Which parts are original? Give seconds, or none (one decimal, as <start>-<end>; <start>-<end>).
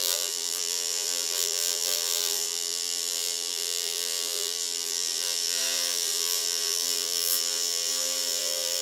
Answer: none